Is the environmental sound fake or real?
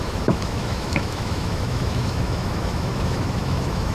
fake